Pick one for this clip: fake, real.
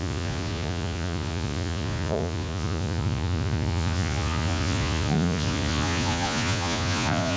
fake